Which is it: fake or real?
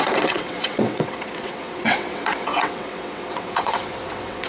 fake